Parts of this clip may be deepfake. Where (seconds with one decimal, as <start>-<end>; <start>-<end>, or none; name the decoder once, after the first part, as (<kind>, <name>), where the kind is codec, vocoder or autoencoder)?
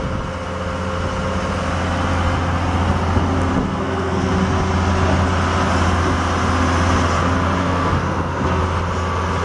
3.6-4.3 (codec, SNAC); 7.6-8.6